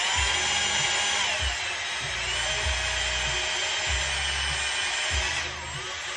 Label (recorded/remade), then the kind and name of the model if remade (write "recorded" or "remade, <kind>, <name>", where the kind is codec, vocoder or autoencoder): recorded